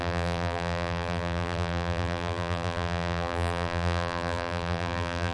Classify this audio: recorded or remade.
remade